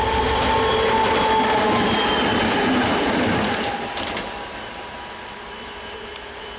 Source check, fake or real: real